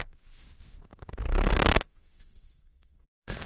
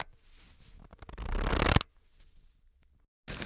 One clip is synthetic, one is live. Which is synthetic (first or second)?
first